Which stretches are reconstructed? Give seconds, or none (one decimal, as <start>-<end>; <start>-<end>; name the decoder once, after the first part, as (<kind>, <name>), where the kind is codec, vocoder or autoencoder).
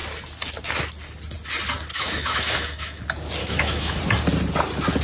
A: 1.9-3.0 (autoencoder, DAC-VAE); 3.4-4.0